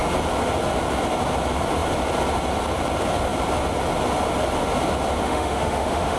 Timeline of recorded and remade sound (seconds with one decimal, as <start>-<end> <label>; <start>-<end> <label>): 0.0-5.2 recorded; 5.2-6.2 remade